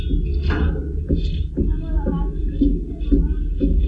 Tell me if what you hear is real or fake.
real